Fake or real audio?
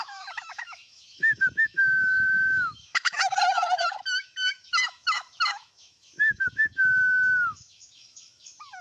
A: fake